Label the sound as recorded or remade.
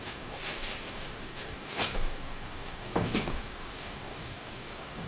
remade